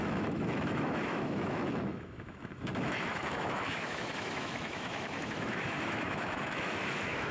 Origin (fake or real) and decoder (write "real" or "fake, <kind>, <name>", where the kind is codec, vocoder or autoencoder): fake, autoencoder, DAC-VAE